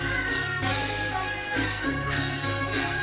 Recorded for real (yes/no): no